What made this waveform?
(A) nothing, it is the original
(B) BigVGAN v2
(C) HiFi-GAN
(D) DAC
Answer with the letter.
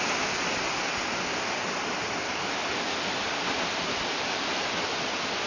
A